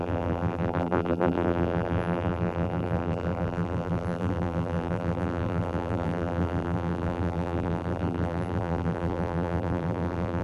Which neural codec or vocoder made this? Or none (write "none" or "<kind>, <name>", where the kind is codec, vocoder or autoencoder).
vocoder, BigVGAN v2